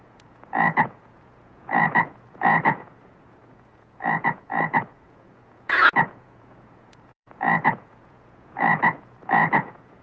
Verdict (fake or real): fake